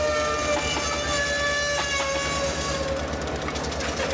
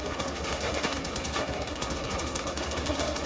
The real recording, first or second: first